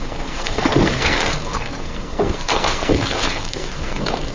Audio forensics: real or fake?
fake